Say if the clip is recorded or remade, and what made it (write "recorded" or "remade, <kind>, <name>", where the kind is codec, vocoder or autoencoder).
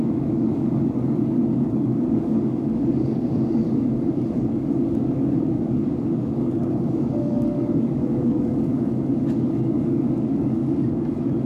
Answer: remade, codec, DAC